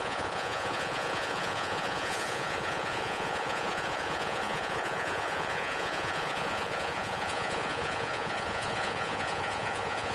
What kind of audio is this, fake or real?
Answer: fake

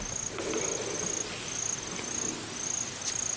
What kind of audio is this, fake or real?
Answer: real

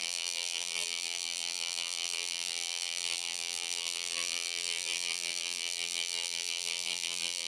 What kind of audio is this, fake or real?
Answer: fake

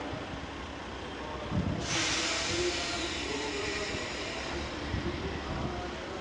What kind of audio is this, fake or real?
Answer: real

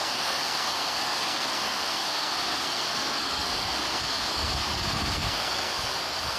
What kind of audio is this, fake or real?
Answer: fake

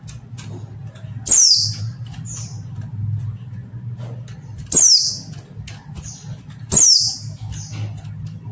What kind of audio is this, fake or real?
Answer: real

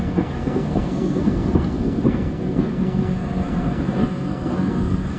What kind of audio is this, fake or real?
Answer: fake